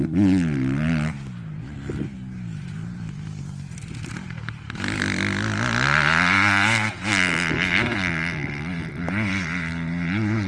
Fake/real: real